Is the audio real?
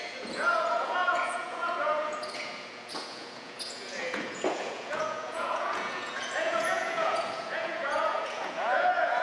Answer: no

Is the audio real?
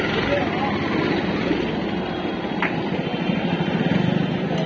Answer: yes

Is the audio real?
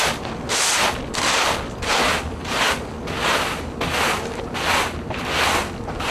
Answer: yes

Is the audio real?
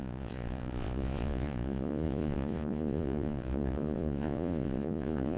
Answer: no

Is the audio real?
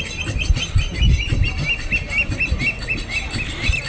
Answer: yes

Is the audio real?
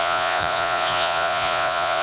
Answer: no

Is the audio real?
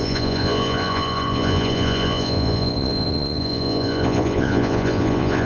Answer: no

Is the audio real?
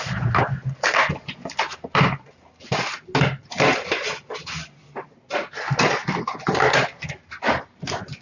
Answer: yes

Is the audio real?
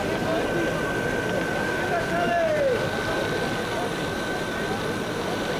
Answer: yes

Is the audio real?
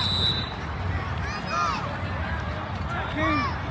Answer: yes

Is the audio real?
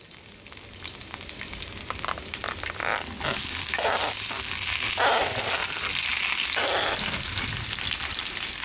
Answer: yes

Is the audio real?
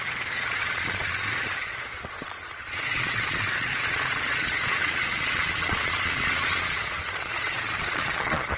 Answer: no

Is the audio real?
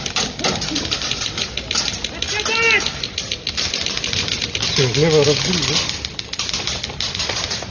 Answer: yes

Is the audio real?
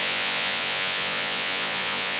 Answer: no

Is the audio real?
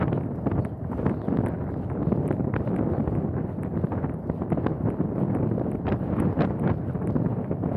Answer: yes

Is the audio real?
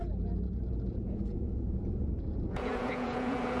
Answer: no